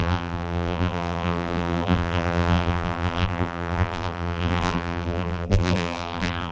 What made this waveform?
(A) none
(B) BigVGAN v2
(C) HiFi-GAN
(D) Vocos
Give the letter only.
B